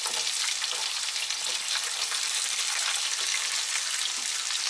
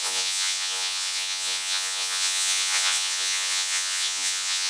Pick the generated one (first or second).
second